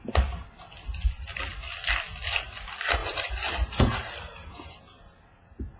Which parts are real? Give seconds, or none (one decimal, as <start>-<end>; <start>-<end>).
0.0-3.0; 4.8-5.8